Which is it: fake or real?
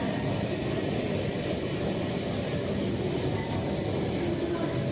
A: real